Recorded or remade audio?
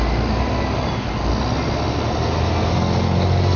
recorded